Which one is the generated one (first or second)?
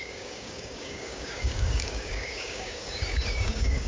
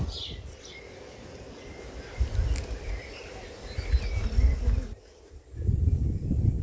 first